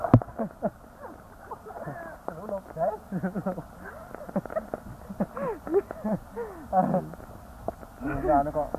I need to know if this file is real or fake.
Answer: real